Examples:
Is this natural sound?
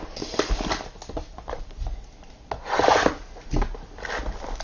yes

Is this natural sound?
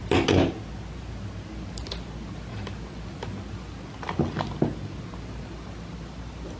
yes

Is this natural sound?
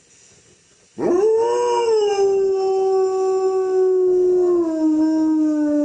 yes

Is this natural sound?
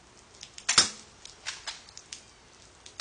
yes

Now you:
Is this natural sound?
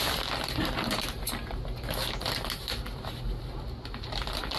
yes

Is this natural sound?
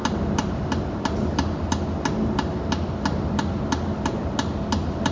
yes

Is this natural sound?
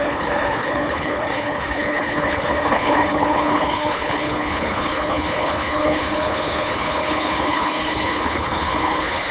no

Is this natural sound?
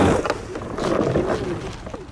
yes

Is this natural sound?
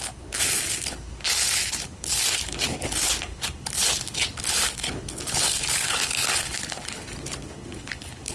no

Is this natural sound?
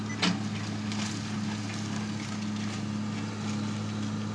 yes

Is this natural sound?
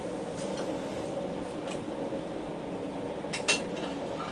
yes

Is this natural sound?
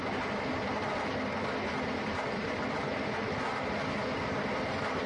yes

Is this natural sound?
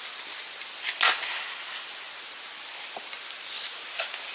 yes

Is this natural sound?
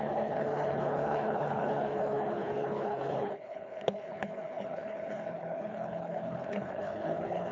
no